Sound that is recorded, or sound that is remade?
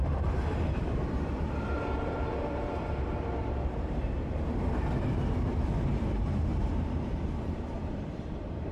remade